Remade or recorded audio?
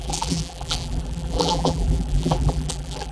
remade